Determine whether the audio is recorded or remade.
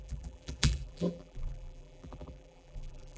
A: remade